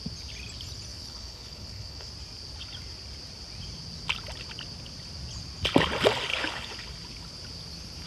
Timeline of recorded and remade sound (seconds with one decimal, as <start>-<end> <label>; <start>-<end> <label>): 0.0-0.9 recorded; 0.9-2.1 remade; 2.1-6.3 recorded; 6.3-6.9 remade; 6.9-8.1 recorded